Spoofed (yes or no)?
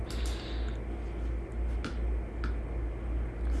no